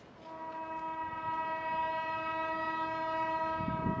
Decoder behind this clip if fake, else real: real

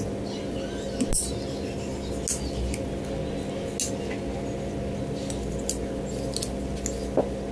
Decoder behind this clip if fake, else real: real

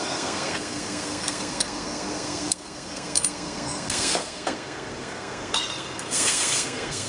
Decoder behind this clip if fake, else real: fake, codec, SNAC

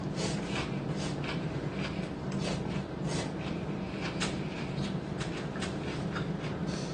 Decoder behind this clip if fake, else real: fake, vocoder, BigVGAN v2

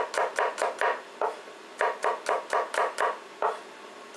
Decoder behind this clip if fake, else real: real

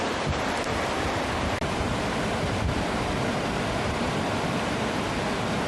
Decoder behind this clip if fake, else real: real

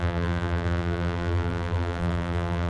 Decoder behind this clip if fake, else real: fake, vocoder, BigVGAN v2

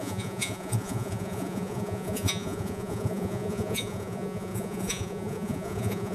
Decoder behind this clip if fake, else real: fake, vocoder, Vocos